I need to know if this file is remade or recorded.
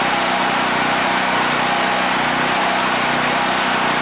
recorded